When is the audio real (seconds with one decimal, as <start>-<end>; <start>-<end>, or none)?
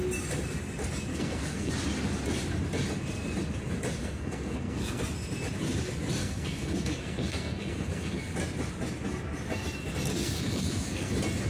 0.0-1.1; 1.7-4.0; 5.0-6.2; 8.2-10.1; 11.1-11.5